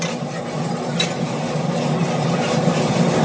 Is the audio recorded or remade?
recorded